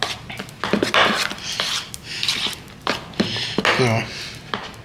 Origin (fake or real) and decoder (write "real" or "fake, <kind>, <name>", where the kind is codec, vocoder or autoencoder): real